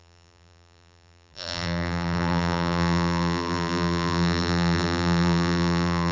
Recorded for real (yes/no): no